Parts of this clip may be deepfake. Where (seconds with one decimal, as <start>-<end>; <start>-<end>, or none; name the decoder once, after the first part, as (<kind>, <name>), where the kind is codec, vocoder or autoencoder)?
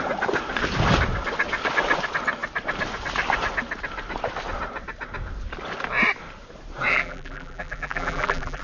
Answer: 6.9-8.6 (vocoder, BigVGAN v2)